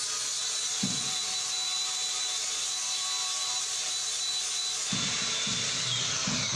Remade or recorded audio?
remade